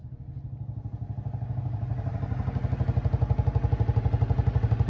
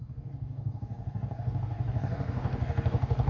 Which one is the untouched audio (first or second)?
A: first